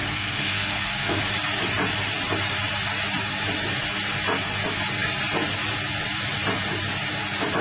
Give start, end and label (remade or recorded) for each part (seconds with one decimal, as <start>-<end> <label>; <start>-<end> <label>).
0.0-1.2 remade; 1.2-7.6 recorded